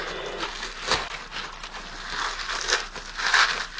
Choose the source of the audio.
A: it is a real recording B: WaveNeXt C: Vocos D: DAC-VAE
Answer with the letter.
A